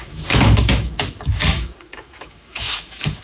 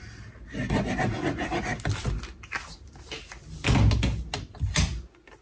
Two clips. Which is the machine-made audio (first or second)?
first